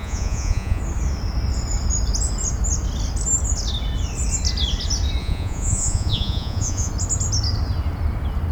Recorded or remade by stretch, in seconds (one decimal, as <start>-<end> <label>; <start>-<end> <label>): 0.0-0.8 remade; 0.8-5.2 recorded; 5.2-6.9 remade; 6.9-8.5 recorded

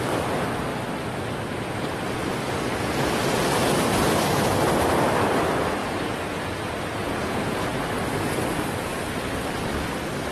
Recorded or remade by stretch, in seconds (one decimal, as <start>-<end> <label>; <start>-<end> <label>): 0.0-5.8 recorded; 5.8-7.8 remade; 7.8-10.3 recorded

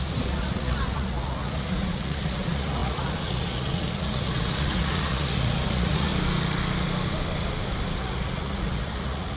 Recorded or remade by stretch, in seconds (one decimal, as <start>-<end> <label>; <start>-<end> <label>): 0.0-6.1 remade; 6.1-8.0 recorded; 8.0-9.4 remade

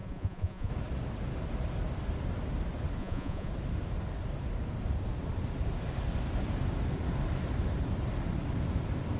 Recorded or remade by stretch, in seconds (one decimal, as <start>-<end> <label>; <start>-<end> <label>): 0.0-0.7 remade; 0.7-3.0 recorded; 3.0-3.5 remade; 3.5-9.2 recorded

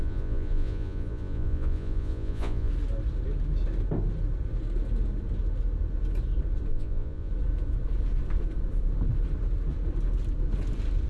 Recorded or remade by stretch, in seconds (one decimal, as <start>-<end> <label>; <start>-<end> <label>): 0.0-2.7 remade; 2.7-6.7 recorded; 6.7-7.3 remade; 7.3-11.1 recorded

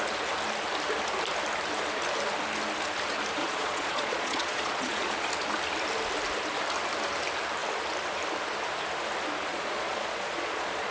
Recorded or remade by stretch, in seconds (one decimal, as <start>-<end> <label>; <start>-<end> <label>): 0.0-3.4 recorded; 3.4-5.3 remade; 5.3-9.5 recorded; 9.5-10.9 remade

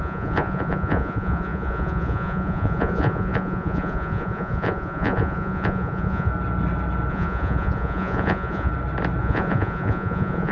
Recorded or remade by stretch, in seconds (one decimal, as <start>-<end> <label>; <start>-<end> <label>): 0.0-6.3 remade; 6.3-7.1 recorded; 7.1-8.7 remade; 8.7-9.2 recorded; 9.2-10.5 remade